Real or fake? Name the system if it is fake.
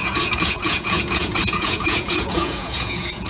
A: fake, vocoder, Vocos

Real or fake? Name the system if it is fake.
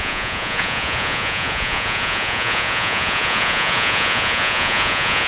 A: fake, vocoder, Vocos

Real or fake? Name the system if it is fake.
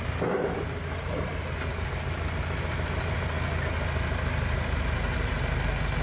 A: real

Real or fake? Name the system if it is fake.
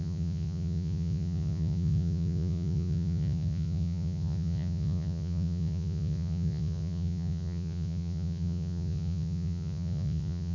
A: fake, vocoder, Vocos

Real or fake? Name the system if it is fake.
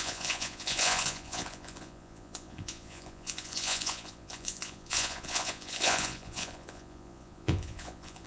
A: fake, vocoder, Vocos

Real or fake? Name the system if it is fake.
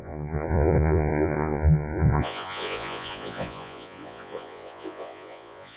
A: fake, vocoder, Vocos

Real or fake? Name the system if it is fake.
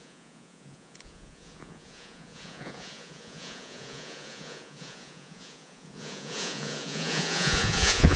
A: fake, vocoder, Vocos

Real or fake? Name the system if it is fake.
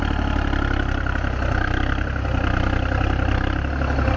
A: real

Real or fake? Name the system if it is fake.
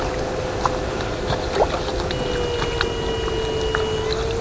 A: real